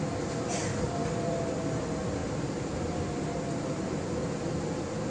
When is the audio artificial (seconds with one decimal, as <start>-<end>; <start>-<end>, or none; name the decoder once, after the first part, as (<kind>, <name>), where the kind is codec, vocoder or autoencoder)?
none